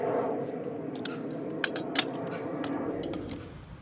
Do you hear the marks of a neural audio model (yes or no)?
no